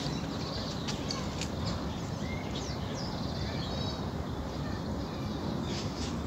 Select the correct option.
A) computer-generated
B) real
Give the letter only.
A